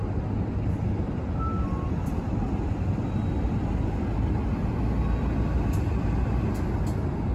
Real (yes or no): yes